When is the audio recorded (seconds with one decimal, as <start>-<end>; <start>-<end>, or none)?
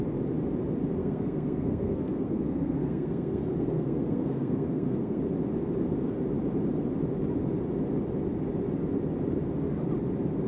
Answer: 0.0-1.0; 5.2-10.5